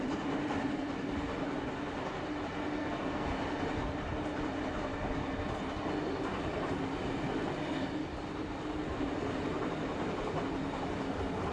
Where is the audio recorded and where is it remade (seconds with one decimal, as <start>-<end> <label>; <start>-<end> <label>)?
0.0-2.8 recorded; 2.8-3.3 remade; 3.3-11.5 recorded